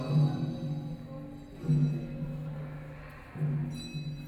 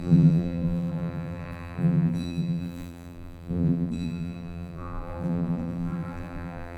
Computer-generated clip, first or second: second